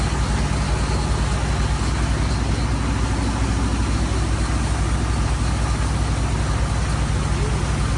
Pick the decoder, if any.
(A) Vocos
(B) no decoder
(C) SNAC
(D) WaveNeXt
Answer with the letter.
B